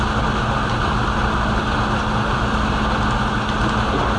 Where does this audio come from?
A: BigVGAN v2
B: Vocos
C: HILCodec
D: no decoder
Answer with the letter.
D